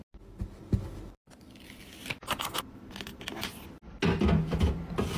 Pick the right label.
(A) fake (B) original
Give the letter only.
B